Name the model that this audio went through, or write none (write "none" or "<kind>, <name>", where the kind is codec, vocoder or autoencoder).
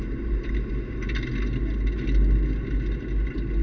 none